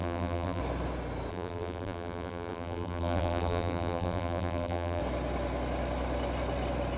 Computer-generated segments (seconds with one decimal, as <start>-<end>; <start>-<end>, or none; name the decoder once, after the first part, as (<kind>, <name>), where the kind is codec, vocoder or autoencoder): 0.0-0.6 (vocoder, BigVGAN v2); 1.3-5.0